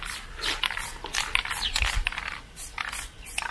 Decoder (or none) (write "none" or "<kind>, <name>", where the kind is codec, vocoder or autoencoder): none